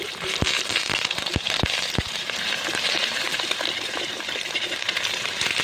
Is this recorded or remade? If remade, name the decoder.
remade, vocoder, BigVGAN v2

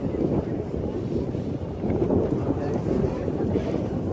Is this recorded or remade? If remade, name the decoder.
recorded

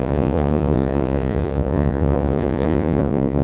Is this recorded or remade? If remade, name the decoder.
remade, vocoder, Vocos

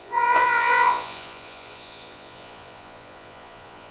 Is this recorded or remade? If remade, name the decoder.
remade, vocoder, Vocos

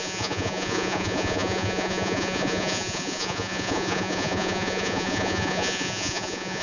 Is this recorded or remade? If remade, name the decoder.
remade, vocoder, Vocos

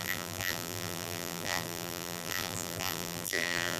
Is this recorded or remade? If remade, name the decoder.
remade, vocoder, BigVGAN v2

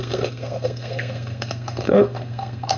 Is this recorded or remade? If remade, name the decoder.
remade, codec, SNAC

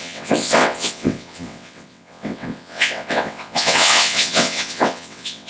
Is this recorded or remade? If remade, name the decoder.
remade, vocoder, WaveNeXt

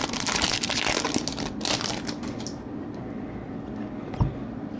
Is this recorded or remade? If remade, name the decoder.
recorded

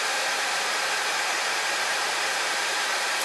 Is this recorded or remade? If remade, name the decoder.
remade, vocoder, BigVGAN v2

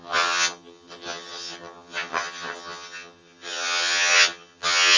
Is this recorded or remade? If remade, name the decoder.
remade, vocoder, HiFi-GAN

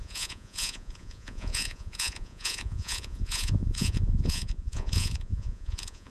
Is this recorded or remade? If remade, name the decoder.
remade, vocoder, Vocos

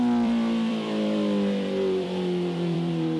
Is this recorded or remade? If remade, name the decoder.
remade, vocoder, BigVGAN v2